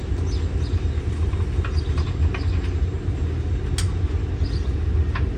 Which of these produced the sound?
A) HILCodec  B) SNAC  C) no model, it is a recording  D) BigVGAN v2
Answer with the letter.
C